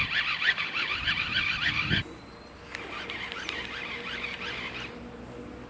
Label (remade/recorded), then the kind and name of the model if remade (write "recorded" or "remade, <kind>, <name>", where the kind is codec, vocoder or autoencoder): recorded